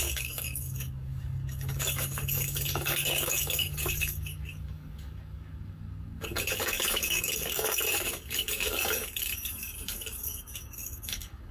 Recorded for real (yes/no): no